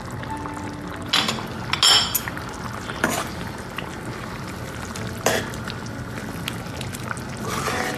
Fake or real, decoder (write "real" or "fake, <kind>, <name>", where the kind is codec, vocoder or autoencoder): real